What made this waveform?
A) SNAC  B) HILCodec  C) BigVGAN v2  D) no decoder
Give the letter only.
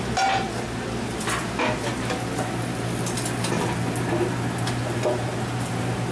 D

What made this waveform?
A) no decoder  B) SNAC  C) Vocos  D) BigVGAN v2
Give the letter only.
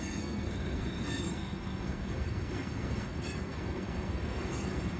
B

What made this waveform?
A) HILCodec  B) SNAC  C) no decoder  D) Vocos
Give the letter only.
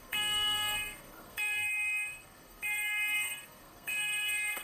B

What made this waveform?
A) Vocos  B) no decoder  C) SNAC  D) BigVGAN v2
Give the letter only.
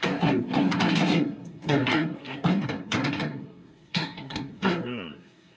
C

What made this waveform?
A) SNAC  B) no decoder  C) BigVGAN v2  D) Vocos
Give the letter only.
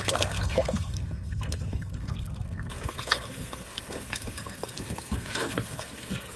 A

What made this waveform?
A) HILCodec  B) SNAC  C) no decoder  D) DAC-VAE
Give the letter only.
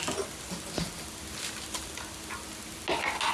C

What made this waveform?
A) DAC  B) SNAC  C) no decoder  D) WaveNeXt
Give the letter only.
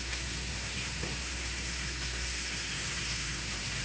B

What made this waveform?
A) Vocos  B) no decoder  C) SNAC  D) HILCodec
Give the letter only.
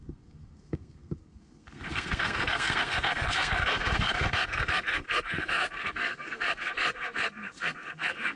C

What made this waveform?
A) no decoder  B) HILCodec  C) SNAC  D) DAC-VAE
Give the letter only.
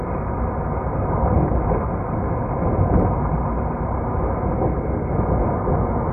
A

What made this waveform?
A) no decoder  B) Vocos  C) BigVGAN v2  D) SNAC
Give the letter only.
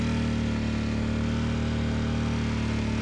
A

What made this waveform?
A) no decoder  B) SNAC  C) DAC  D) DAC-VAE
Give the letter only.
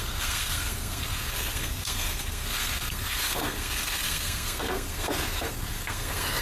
B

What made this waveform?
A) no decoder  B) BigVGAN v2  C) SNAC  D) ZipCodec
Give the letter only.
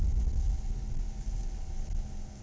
A